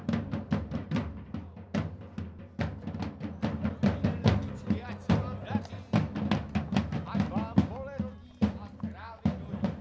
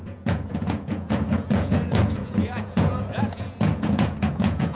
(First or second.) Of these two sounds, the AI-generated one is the second